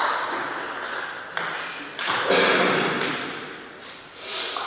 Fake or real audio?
real